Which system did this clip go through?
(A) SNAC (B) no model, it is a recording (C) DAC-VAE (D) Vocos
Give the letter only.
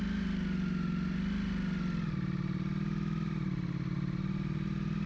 B